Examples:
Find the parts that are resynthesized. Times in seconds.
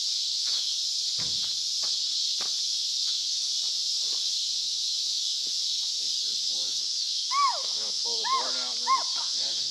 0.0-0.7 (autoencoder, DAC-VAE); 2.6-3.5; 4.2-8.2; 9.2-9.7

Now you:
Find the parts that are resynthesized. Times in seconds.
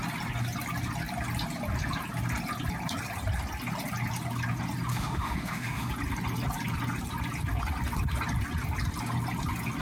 4.9-5.9 (autoencoder, DAC-VAE)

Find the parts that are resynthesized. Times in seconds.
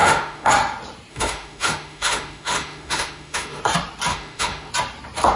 0.0-0.5 (autoencoder, DAC-VAE); 1.1-3.6; 4.1-4.7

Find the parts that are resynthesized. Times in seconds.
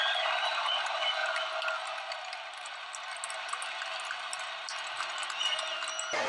none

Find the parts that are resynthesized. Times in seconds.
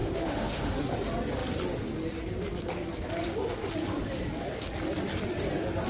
0.0-0.8 (autoencoder, DAC-VAE)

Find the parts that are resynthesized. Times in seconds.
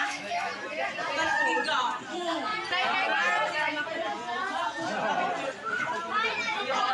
0.0-0.5 (autoencoder, DAC-VAE); 2.1-2.5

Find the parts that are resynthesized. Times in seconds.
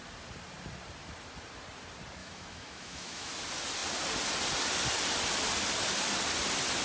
2.2-3.3 (autoencoder, DAC-VAE)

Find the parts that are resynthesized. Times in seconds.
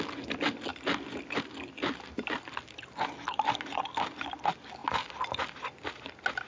none